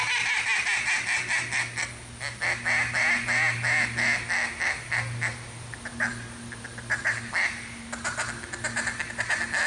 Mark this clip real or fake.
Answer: real